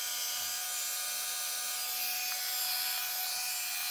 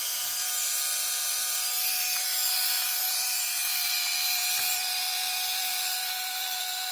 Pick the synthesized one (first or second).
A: second